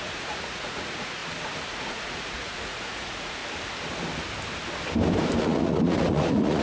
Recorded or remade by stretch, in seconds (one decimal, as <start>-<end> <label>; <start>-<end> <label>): 0.0-1.2 remade; 1.2-1.7 recorded; 1.7-3.4 remade; 3.4-5.4 recorded; 5.4-6.6 remade